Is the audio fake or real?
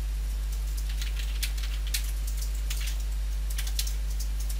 real